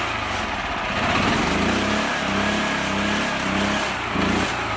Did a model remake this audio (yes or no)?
no